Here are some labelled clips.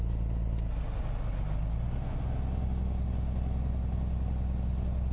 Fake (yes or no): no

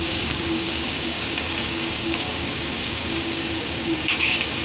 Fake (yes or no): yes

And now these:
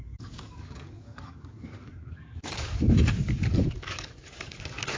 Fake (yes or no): yes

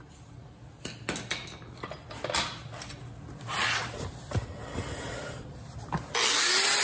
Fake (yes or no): no